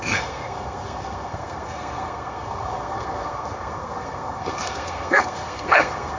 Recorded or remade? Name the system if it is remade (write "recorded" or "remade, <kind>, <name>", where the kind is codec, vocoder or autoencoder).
remade, codec, SNAC